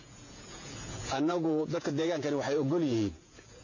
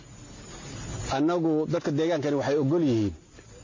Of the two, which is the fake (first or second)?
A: first